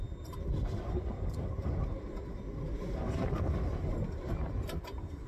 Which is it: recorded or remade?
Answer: recorded